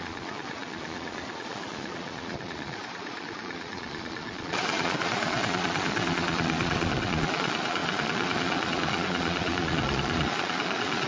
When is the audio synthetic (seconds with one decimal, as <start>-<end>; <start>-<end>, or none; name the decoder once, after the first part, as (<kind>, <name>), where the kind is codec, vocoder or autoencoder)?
0.0-11.1 (vocoder, Vocos)